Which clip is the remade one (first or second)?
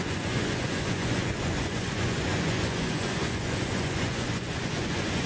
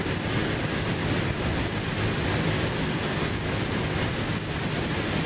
first